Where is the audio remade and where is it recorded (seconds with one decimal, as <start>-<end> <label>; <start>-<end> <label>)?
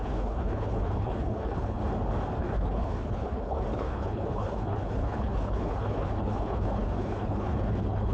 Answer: 0.0-1.8 remade; 1.8-2.4 recorded; 2.4-8.1 remade